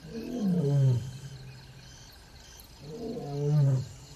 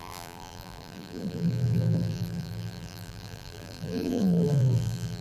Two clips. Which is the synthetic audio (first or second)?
second